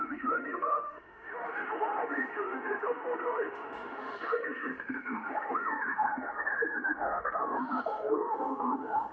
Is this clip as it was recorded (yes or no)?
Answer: no